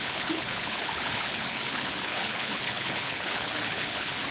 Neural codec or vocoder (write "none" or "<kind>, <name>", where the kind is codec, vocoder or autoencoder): codec, HILCodec